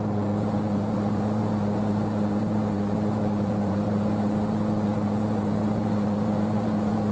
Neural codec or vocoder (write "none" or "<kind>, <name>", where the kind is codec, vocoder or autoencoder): vocoder, Vocos